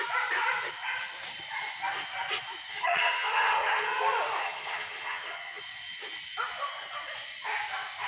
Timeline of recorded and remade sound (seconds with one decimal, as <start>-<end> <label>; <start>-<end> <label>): 0.0-2.7 recorded; 2.7-4.0 remade; 4.0-4.4 recorded; 4.4-5.6 remade; 5.6-8.1 recorded

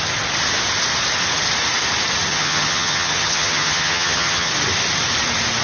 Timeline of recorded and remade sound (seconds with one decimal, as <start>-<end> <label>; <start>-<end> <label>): 0.0-2.3 recorded; 2.3-4.5 remade; 4.5-5.6 recorded

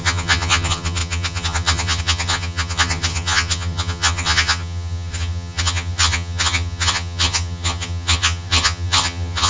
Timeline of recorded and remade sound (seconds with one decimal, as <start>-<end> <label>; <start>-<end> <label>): 0.0-9.5 remade

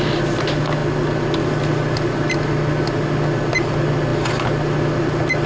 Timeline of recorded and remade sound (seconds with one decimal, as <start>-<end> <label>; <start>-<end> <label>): 0.0-5.5 recorded

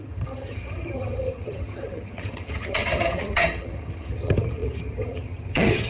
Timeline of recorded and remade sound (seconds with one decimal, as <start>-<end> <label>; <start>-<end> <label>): 0.0-5.9 remade

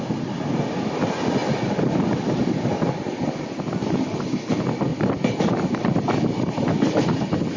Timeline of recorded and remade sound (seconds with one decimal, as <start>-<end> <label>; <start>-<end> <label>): 0.0-7.6 recorded

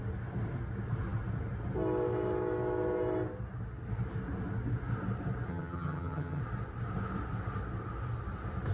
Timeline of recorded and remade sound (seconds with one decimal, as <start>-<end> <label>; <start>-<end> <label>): 0.0-5.5 recorded; 5.5-6.4 remade; 6.4-8.7 recorded

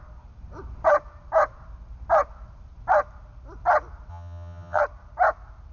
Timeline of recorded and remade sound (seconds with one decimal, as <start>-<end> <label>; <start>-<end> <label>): 0.0-4.1 recorded; 4.1-4.8 remade; 4.8-5.7 recorded